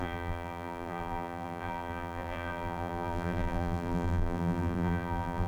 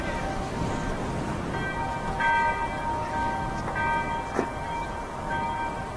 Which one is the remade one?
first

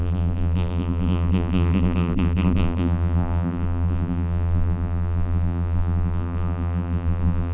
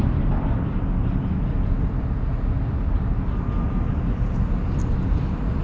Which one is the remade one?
first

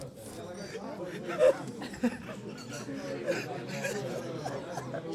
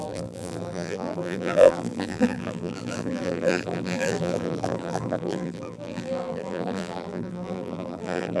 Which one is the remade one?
second